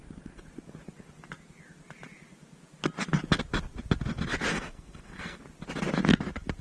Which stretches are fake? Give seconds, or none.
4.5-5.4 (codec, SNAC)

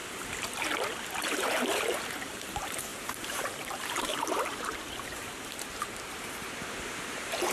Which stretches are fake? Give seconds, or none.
1.1-7.5 (vocoder, BigVGAN v2)

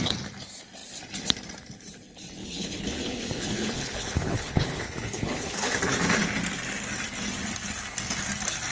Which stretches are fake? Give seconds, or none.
2.4-6.0 (codec, HILCodec)

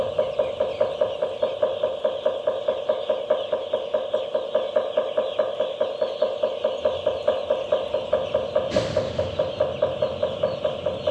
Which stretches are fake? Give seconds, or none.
none